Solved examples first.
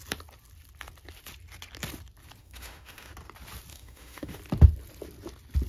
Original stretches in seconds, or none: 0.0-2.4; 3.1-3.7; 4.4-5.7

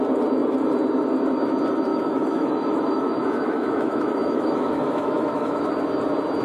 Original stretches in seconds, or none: 0.0-1.9; 5.7-6.4

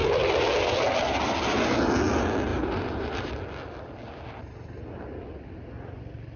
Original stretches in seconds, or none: 0.0-2.5; 3.3-6.4

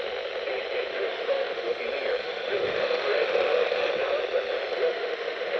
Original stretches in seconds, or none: 0.0-0.9; 1.8-2.2; 3.9-4.7

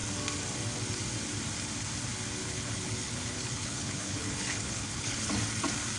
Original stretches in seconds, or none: 0.0-2.4; 5.3-6.0

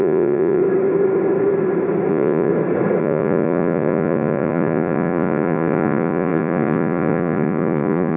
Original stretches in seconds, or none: 0.6-2.1; 2.5-3.0